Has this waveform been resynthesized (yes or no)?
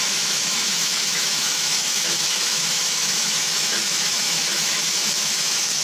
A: yes